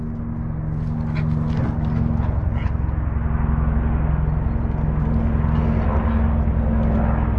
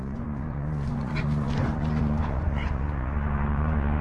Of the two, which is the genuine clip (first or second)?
first